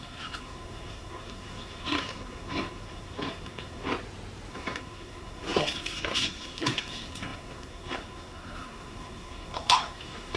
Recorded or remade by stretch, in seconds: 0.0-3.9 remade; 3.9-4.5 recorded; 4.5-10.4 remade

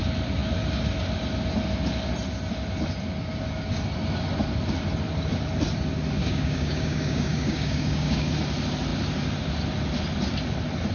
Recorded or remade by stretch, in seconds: 0.0-6.2 recorded; 6.2-8.3 remade; 8.3-10.9 recorded

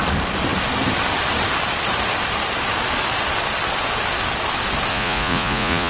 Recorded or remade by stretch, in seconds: 0.0-4.9 recorded; 4.9-5.9 remade

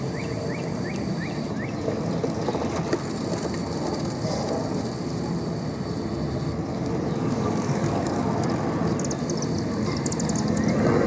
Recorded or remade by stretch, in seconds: 0.0-7.2 recorded; 7.2-8.2 remade; 8.2-11.1 recorded